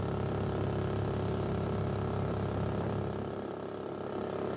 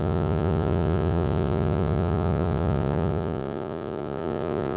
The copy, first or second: second